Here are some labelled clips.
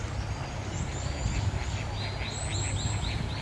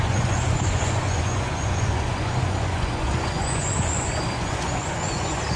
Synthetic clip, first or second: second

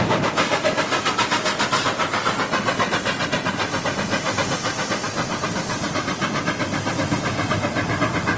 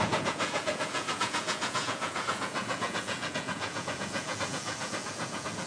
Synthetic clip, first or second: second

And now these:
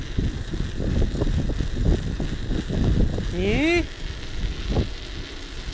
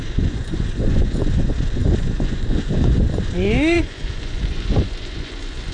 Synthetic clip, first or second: second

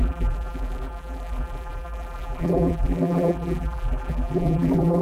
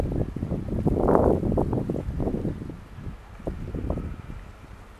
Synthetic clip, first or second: first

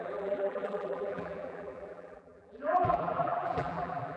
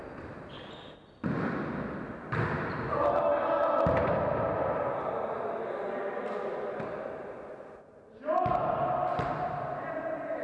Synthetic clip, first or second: first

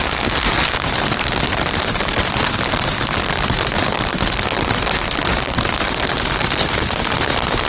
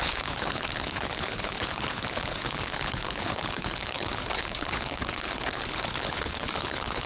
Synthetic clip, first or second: second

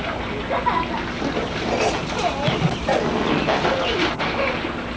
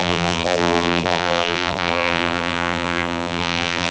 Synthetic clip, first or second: second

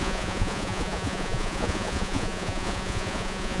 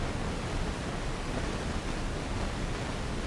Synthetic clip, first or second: first